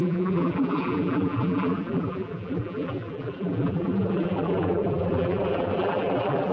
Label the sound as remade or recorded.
remade